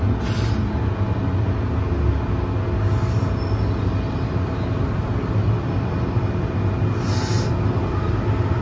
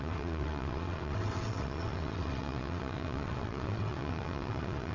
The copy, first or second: second